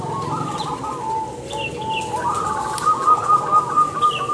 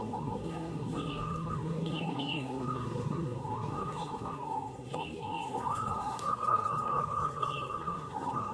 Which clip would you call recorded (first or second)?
first